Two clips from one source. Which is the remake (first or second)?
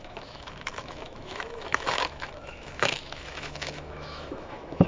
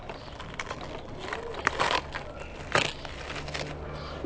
first